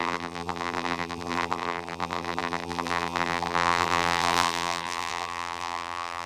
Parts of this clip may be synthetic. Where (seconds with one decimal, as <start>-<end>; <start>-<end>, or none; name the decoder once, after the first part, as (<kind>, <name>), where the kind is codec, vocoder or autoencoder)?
0.0-6.3 (vocoder, BigVGAN v2)